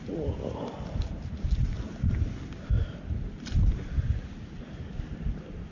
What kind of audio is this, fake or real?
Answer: real